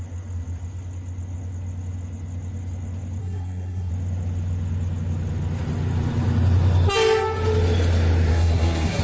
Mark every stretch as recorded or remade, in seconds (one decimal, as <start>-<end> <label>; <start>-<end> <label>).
0.0-3.2 recorded; 3.2-3.9 remade; 3.9-8.3 recorded; 8.3-9.0 remade